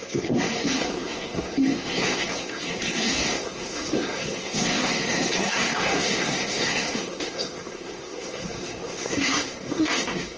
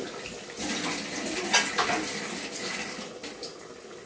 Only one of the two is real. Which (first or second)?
second